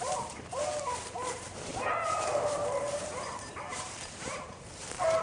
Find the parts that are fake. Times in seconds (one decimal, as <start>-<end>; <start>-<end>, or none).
0.0-5.2